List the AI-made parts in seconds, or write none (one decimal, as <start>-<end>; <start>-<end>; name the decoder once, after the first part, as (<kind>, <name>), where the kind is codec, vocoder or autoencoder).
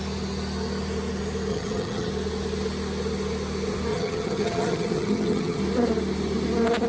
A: 1.5-2.1 (vocoder, HiFi-GAN); 3.9-5.6